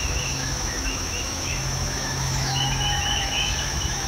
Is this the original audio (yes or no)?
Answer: no